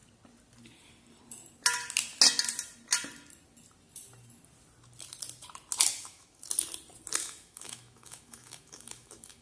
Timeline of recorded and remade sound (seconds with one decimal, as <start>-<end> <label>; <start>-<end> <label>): 0.0-5.9 recorded; 5.9-6.4 remade; 6.4-7.2 recorded; 7.2-9.4 remade